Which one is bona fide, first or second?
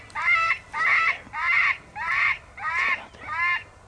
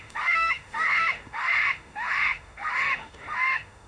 first